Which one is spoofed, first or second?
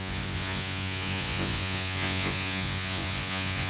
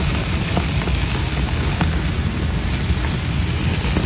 first